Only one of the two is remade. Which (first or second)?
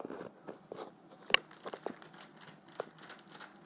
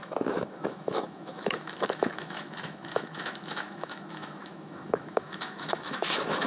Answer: second